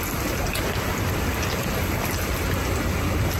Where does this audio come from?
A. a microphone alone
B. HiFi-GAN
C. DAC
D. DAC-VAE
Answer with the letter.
A